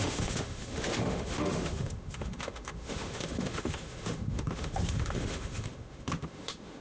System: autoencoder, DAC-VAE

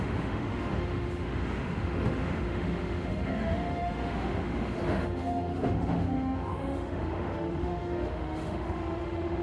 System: autoencoder, DAC-VAE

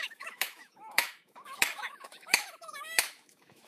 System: autoencoder, DAC-VAE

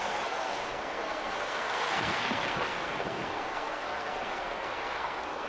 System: codec, SNAC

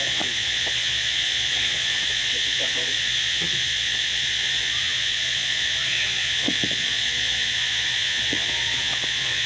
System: vocoder, Vocos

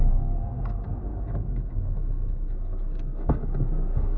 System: codec, SNAC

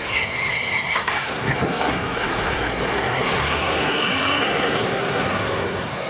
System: codec, SNAC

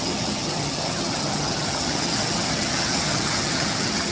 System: vocoder, HiFi-GAN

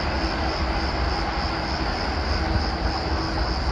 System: none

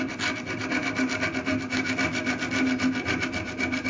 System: none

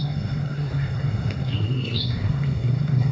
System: codec, SNAC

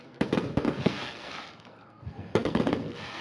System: codec, SNAC